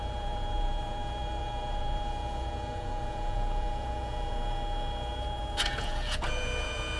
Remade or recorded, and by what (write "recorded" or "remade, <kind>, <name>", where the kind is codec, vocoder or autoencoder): remade, vocoder, Vocos